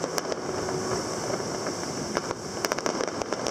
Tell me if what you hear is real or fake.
real